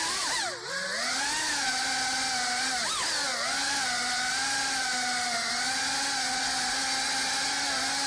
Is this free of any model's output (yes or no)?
yes